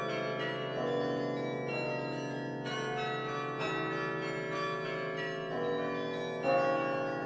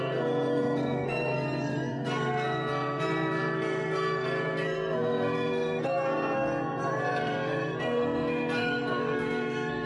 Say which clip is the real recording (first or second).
first